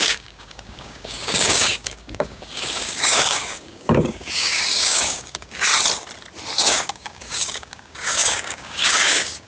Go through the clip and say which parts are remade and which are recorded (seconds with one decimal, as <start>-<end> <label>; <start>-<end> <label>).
0.0-5.7 remade; 5.7-6.6 recorded; 6.6-9.5 remade